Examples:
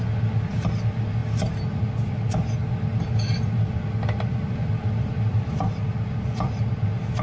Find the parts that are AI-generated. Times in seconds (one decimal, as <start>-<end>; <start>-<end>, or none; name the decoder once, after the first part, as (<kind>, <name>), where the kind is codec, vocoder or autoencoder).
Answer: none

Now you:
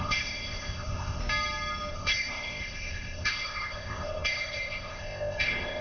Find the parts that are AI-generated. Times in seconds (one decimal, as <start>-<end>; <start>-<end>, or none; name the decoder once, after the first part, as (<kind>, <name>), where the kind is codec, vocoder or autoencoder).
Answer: 0.0-1.2 (codec, ZipCodec); 1.9-5.8

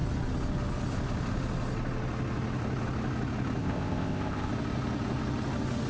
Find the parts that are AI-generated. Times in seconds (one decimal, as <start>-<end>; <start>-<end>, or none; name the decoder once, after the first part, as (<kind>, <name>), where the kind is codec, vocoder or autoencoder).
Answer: 3.6-4.5 (codec, ZipCodec)

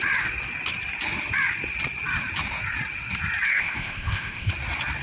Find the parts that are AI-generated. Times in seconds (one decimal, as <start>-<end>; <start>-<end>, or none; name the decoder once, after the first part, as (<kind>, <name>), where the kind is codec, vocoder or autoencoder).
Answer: 3.5-4.5 (codec, ZipCodec)

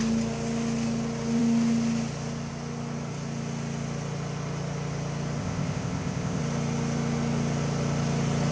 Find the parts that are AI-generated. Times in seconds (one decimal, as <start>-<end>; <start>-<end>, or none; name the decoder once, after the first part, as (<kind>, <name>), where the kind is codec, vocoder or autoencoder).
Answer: 5.4-6.4 (codec, ZipCodec)

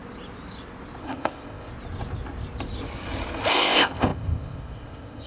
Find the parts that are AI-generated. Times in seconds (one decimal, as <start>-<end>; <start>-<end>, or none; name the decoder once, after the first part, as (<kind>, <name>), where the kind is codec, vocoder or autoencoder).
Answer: 1.0-1.7 (codec, ZipCodec); 3.5-5.3

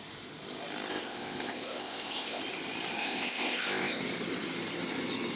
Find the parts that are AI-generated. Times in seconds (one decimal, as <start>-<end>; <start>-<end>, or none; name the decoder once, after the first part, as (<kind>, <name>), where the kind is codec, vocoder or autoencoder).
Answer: 0.9-2.4 (codec, ZipCodec); 3.0-4.0